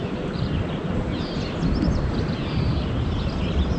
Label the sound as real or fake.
fake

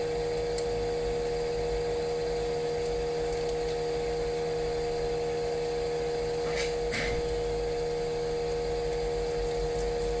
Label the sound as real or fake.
real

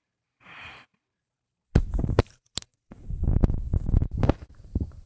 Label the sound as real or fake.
fake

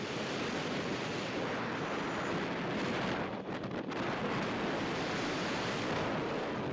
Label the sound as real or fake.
real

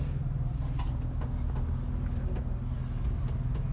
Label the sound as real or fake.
real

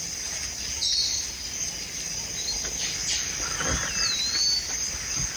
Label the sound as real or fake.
real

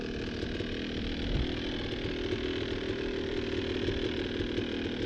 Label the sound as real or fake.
fake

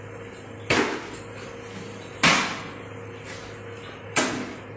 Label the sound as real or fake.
real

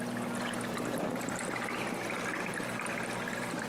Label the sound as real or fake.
real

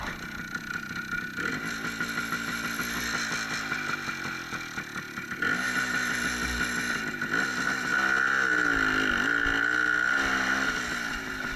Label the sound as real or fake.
real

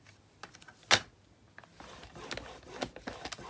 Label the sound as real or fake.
real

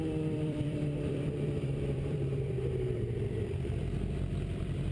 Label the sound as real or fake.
fake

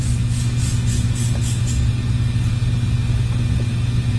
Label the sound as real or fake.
real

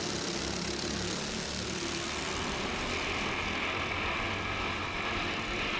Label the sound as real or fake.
real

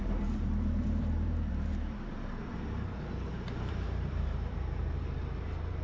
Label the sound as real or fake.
fake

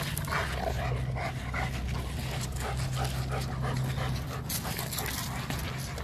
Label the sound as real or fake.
real